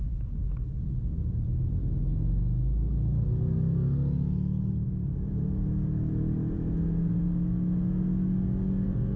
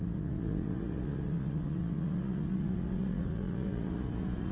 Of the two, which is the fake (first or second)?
second